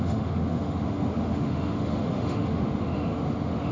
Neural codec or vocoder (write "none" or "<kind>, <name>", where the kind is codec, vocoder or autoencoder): autoencoder, DAC-VAE